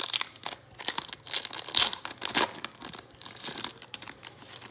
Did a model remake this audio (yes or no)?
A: no